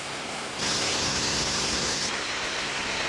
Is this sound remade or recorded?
remade